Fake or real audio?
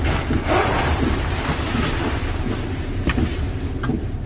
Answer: real